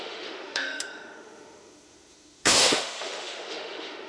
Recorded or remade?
remade